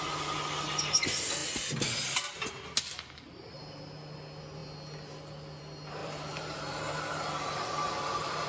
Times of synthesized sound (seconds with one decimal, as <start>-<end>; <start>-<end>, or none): 6.0-8.5